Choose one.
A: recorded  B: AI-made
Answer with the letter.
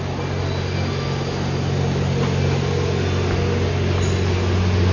A